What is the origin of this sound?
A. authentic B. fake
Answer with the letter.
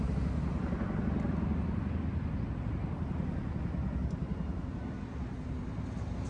A